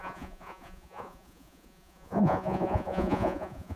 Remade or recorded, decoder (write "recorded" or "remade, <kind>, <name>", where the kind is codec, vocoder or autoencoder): remade, vocoder, Vocos